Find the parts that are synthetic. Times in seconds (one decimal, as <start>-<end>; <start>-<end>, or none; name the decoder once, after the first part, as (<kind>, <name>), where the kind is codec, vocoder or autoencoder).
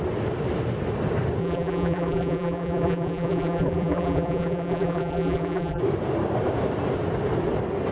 1.4-5.8 (vocoder, BigVGAN v2)